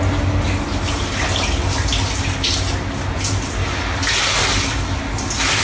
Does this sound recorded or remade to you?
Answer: recorded